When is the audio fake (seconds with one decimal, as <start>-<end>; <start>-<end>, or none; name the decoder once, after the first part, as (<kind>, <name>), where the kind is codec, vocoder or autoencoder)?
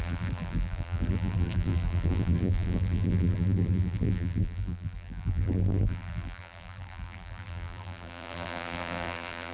0.0-9.5 (vocoder, BigVGAN v2)